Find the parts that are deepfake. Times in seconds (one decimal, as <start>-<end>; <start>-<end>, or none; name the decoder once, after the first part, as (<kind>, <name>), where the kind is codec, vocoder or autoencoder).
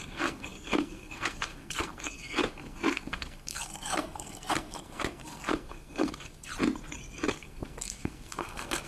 0.0-6.5 (codec, SNAC); 7.3-8.9